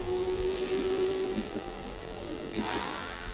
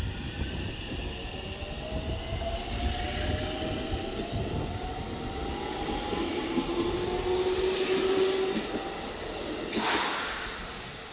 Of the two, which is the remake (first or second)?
first